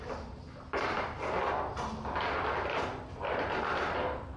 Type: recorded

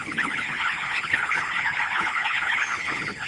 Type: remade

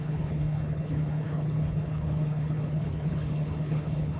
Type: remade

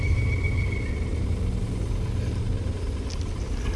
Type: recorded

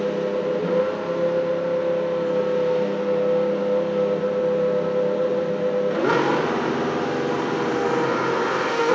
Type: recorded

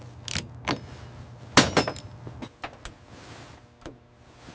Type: recorded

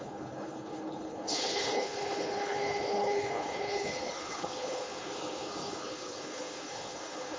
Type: remade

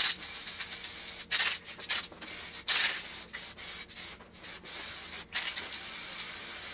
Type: recorded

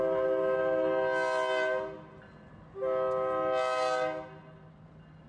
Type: recorded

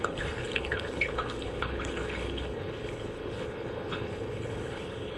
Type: remade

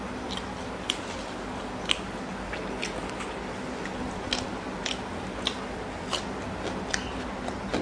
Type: recorded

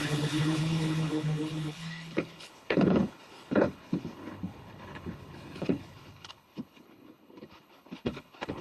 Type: remade